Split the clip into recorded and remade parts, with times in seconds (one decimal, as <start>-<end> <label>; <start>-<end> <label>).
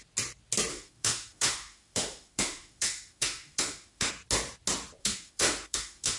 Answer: 0.0-0.7 recorded; 0.7-4.1 remade; 4.1-5.0 recorded; 5.0-6.2 remade